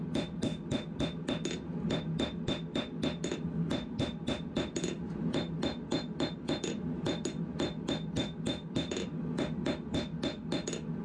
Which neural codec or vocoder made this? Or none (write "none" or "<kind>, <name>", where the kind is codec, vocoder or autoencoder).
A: none